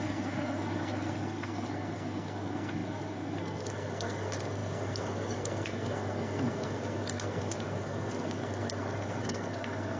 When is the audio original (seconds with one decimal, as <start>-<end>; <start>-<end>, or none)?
none